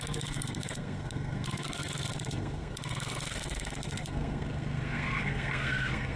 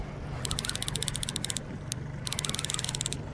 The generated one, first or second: first